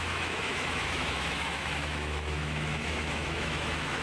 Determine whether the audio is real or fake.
fake